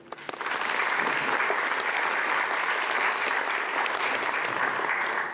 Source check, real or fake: real